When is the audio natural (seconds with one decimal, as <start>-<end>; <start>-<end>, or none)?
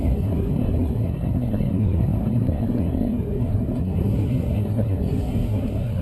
none